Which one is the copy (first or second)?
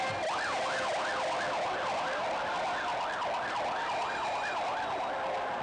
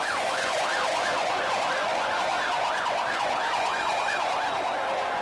second